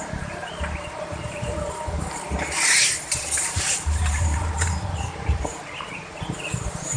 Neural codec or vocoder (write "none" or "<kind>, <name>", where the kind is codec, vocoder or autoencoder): vocoder, BigVGAN v2